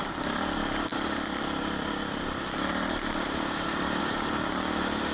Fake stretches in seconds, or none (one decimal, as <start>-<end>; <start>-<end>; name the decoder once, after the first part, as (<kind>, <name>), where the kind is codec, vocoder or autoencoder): 0.9-4.0 (vocoder, BigVGAN v2)